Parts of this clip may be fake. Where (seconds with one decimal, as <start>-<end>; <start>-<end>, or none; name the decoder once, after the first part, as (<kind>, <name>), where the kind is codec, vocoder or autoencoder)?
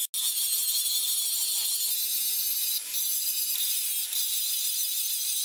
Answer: none